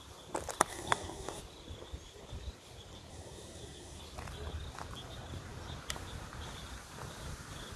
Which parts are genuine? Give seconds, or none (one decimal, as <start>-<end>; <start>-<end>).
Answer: 0.0-0.7; 1.4-3.1; 4.0-7.8